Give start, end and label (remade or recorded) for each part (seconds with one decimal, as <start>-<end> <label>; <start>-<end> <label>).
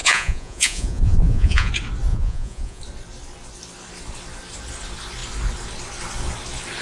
0.0-1.7 remade; 1.7-2.1 recorded; 2.1-2.8 remade; 2.8-6.8 recorded